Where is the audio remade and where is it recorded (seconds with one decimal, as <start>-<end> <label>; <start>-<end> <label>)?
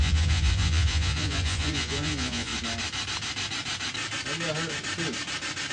0.0-2.5 remade; 2.5-5.7 recorded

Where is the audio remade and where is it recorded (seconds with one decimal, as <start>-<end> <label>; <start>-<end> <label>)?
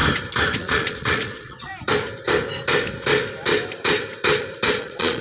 0.0-0.6 recorded; 0.6-1.7 remade; 1.7-4.8 recorded; 4.8-5.2 remade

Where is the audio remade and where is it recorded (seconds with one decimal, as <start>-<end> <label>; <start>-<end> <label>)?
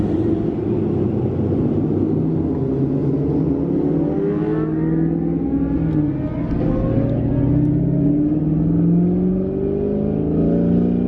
0.0-11.1 recorded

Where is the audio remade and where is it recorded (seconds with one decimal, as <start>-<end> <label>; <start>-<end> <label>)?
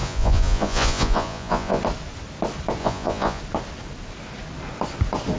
0.0-1.8 remade; 1.8-2.8 recorded; 2.8-3.4 remade; 3.4-5.4 recorded